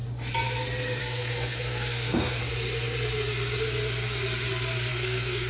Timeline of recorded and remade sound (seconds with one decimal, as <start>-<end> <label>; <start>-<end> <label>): 0.0-1.0 recorded; 1.0-2.4 remade; 2.4-4.9 recorded; 4.9-5.5 remade